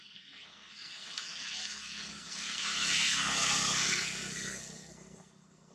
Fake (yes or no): yes